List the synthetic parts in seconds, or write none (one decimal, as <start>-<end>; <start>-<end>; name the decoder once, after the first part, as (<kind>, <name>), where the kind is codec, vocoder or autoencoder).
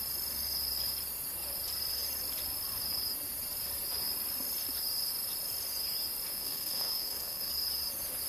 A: 6.3-7.5 (codec, SNAC)